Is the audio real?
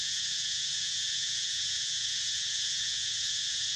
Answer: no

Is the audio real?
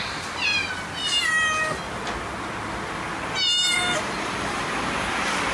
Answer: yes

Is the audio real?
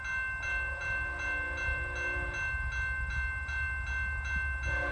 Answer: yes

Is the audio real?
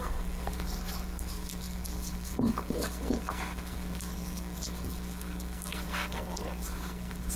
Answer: no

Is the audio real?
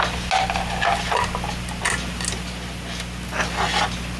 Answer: yes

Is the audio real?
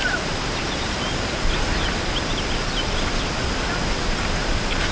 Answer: yes